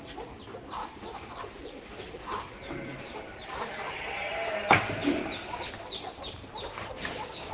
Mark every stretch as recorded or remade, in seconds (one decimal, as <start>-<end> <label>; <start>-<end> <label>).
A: 0.0-0.8 recorded; 0.8-4.5 remade; 4.5-5.2 recorded; 5.2-5.7 remade; 5.7-7.5 recorded